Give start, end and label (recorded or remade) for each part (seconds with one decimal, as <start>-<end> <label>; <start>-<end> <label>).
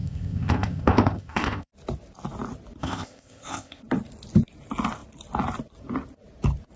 0.0-1.7 remade; 1.7-2.8 recorded; 2.8-3.8 remade; 3.8-6.8 recorded